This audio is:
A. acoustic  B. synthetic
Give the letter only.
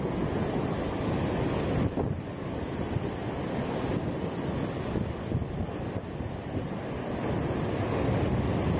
A